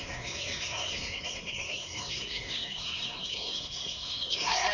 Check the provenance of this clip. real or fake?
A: fake